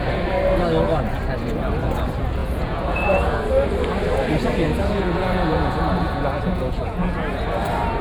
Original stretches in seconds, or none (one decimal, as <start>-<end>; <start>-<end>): 0.0-2.4; 3.4-4.8; 7.4-8.0